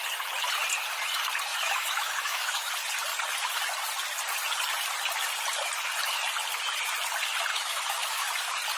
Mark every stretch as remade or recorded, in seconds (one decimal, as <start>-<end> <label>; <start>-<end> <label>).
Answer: 0.0-1.5 recorded; 1.5-2.7 remade; 2.7-7.5 recorded; 7.5-8.3 remade; 8.3-8.8 recorded